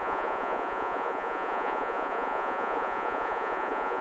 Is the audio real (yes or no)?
no